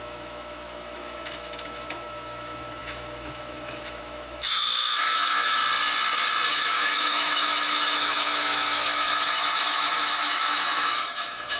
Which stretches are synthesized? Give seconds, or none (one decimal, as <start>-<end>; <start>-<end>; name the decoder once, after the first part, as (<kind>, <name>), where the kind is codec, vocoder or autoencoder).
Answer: 0.0-5.6 (autoencoder, DAC-VAE); 6.5-11.6